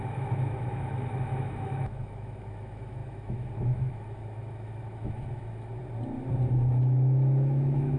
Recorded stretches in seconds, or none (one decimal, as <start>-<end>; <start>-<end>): 5.7-6.8